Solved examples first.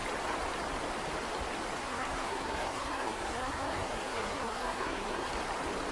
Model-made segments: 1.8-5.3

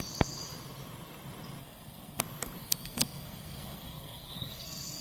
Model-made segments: 1.6-2.2; 2.6-5.0

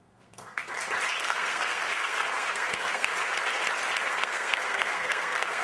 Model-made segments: 0.0-0.6; 1.2-3.1; 4.1-5.6